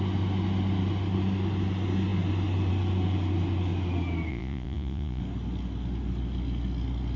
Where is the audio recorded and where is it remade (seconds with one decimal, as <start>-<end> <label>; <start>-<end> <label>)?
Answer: 0.0-4.3 recorded; 4.3-5.2 remade; 5.2-7.2 recorded